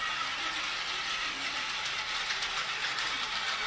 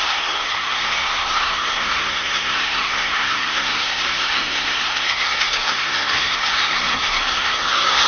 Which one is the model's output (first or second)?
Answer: second